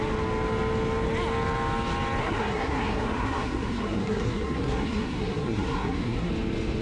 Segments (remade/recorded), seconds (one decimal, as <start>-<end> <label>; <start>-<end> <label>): 0.0-2.2 recorded; 2.2-6.3 remade; 6.3-6.8 recorded